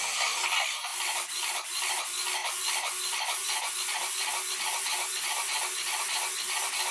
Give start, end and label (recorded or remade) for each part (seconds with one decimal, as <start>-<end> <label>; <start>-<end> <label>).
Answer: 0.0-6.9 recorded